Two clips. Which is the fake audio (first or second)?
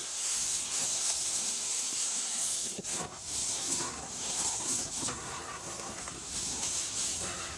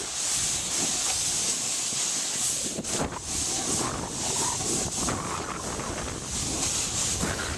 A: first